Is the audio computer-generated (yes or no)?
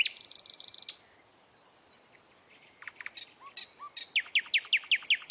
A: no